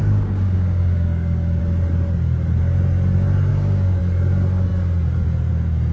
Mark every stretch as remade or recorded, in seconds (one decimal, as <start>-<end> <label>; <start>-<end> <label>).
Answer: 0.0-1.6 remade; 1.6-3.5 recorded; 3.5-4.0 remade; 4.0-5.9 recorded